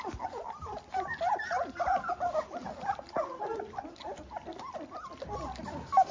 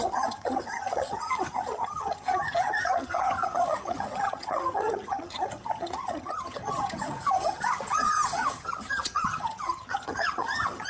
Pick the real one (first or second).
first